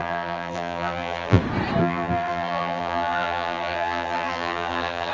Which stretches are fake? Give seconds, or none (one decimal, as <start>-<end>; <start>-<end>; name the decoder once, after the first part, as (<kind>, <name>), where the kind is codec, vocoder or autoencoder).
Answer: 0.0-1.4 (vocoder, BigVGAN v2); 1.8-5.1